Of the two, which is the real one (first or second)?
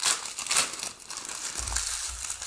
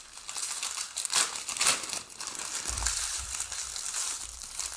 first